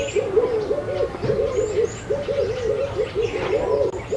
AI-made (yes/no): no